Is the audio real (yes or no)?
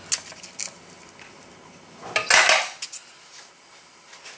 yes